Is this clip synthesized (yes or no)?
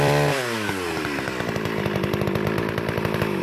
yes